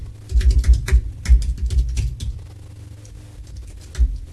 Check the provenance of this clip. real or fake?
real